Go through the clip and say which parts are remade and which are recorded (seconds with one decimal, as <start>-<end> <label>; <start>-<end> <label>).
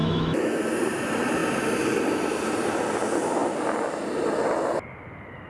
0.0-0.6 remade; 0.6-5.5 recorded